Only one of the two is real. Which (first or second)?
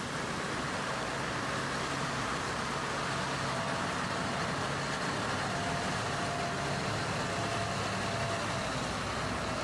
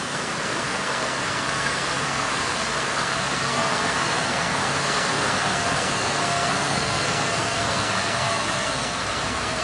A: first